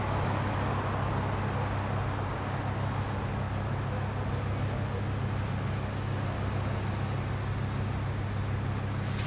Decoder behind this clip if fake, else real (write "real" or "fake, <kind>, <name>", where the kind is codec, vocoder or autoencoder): real